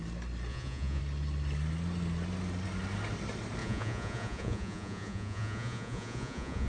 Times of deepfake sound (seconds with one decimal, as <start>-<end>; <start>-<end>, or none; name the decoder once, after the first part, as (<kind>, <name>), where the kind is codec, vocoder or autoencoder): 0.5-1.0 (vocoder, Vocos); 3.6-6.7